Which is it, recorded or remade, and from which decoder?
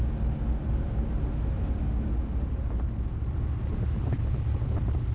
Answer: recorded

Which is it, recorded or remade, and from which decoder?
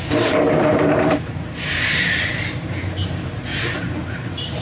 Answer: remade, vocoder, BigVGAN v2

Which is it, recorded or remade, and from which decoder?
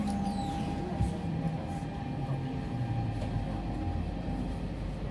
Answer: recorded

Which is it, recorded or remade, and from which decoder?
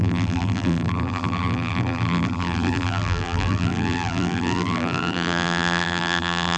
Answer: remade, vocoder, BigVGAN v2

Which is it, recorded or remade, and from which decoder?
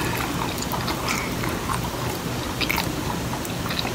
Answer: recorded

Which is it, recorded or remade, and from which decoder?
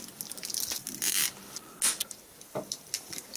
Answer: recorded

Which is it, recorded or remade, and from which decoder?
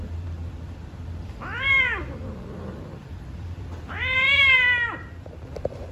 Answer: remade, vocoder, BigVGAN v2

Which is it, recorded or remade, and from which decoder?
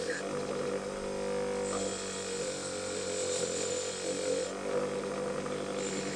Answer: recorded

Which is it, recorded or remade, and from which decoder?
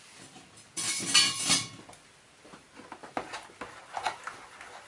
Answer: recorded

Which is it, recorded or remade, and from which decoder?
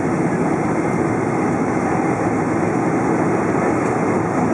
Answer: recorded